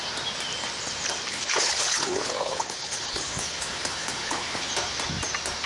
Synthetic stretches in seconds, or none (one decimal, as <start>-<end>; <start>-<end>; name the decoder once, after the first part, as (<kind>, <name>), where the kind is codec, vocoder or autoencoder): 1.3-4.7 (codec, HILCodec)